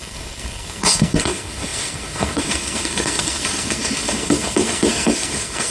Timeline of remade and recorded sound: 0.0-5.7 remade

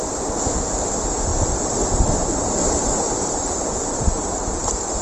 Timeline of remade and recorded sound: 0.0-5.0 recorded